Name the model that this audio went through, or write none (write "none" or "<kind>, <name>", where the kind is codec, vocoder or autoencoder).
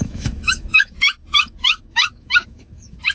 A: autoencoder, DAC-VAE